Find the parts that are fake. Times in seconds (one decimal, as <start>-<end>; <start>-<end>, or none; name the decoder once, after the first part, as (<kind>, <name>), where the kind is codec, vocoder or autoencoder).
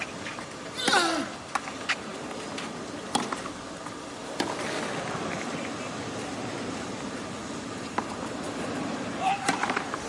none